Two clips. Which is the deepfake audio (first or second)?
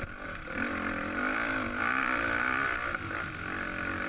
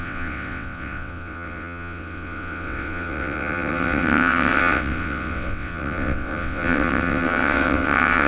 second